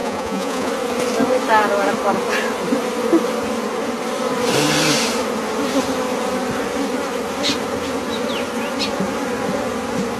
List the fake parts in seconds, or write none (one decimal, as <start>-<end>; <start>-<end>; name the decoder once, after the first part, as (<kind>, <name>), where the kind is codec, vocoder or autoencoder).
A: 0.0-0.7 (vocoder, Vocos)